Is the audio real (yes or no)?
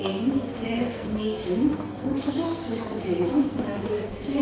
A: no